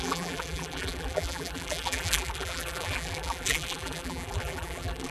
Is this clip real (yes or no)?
no